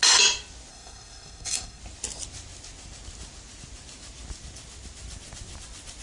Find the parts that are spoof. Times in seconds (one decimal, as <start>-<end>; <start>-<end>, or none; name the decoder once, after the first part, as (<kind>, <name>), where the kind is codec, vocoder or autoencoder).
0.7-1.8 (codec, SNAC)